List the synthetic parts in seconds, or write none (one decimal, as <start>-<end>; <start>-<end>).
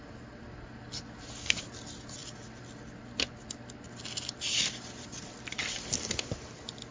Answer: none